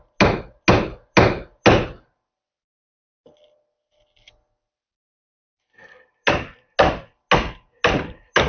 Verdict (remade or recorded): recorded